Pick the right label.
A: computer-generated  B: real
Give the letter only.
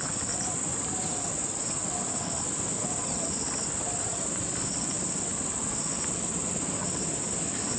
B